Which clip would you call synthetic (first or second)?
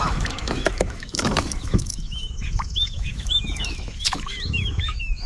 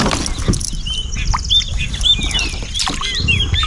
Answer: first